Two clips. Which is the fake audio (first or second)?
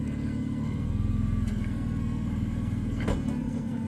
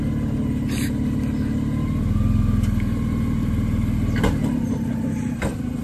first